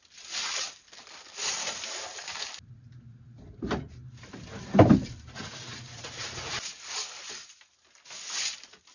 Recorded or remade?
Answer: recorded